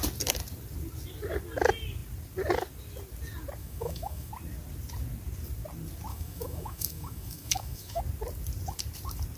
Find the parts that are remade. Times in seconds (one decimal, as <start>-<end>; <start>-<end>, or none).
3.6-4.3; 6.1-8.0